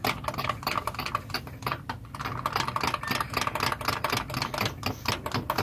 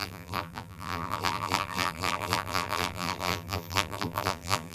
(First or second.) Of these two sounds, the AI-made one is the second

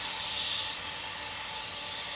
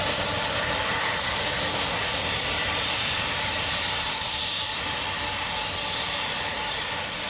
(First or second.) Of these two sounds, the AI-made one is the second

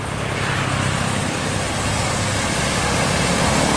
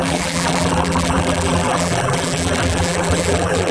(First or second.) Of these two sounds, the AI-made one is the second